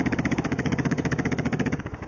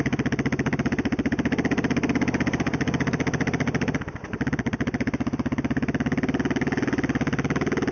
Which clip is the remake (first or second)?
first